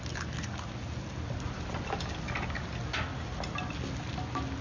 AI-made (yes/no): no